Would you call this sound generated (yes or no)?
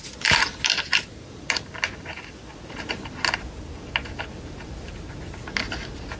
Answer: no